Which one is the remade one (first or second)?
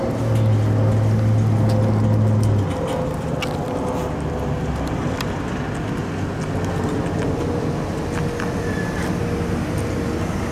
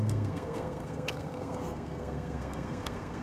second